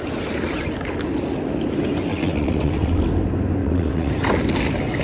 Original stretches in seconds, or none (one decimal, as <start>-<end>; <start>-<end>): 0.0-2.1; 3.0-3.6; 4.1-5.0